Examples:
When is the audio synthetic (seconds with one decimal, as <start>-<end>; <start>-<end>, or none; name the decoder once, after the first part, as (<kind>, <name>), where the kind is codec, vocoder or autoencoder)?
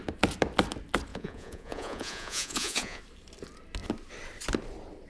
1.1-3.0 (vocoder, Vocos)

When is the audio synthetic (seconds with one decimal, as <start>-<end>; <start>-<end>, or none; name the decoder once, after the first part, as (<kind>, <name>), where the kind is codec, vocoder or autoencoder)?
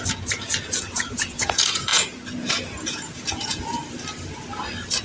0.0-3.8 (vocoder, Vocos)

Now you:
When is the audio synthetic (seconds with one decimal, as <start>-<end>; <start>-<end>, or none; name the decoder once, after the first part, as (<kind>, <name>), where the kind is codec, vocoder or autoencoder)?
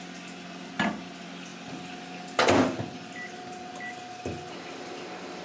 none